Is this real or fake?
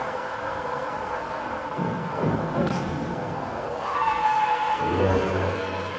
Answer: fake